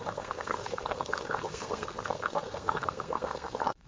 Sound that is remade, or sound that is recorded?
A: remade